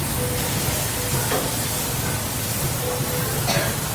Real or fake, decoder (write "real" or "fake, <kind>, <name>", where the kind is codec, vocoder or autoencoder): real